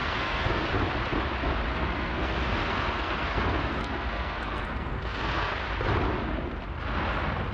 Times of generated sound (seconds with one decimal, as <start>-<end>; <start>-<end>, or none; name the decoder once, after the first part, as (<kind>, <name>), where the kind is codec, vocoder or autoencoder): 0.0-0.7 (codec, SNAC); 1.7-5.5